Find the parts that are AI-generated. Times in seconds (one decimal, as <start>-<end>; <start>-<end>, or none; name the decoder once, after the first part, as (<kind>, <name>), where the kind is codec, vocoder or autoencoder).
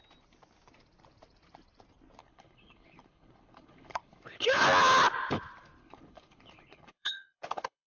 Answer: 2.2-4.6 (codec, HILCodec); 5.8-7.9